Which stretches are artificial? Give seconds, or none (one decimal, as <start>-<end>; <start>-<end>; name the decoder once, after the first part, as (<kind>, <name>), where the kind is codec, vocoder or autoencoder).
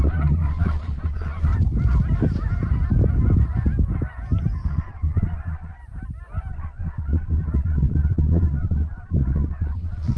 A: 0.0-1.5 (vocoder, Vocos); 4.7-5.8; 6.5-10.2